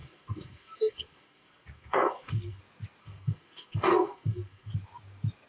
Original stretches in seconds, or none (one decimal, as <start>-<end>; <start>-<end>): 2.6-3.0; 4.7-5.5